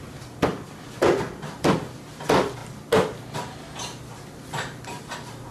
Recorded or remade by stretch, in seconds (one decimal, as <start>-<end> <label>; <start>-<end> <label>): 0.0-2.6 remade; 2.6-4.0 recorded; 4.0-5.5 remade

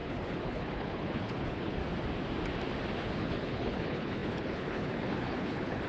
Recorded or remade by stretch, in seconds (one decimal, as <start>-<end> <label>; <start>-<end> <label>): 0.0-1.8 remade; 1.8-3.0 recorded; 3.0-5.9 remade

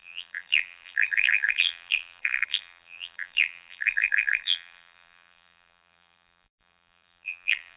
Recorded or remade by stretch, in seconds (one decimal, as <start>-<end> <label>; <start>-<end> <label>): 0.0-7.8 remade

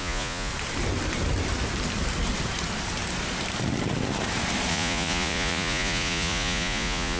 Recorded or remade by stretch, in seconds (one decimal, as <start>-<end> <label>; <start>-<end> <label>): 0.0-0.5 remade; 0.5-4.7 recorded; 4.7-7.2 remade